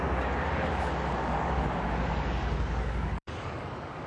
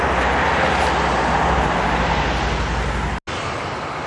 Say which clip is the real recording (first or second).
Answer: second